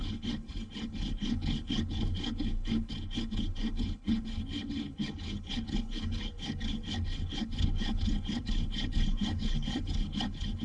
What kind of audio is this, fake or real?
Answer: fake